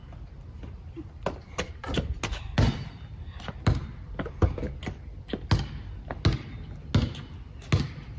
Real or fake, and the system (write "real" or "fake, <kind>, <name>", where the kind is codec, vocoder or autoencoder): real